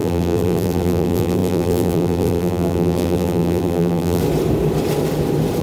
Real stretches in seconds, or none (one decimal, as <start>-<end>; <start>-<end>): 4.2-5.6